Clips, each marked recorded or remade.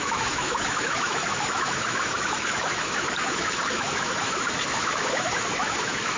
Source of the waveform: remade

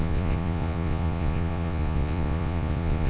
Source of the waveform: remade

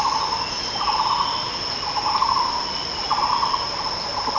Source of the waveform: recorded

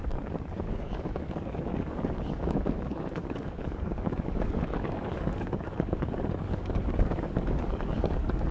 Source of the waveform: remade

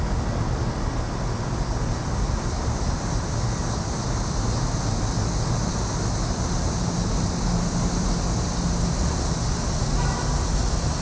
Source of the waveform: recorded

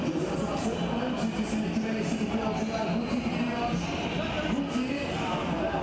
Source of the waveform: recorded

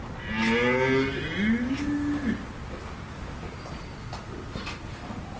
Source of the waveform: recorded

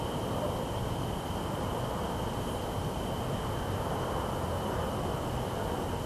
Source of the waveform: recorded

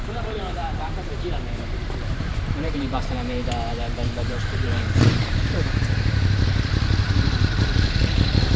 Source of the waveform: remade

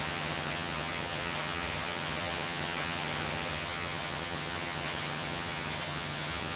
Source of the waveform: remade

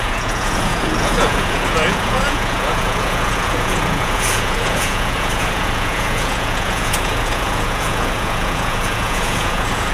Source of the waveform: remade